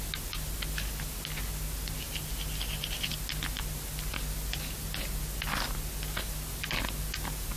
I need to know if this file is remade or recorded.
recorded